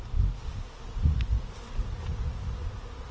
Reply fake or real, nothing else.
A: real